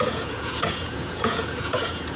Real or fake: fake